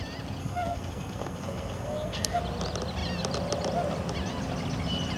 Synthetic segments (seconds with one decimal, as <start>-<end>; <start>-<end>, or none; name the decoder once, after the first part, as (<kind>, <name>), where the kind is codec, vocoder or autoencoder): 0.4-2.4 (codec, SNAC)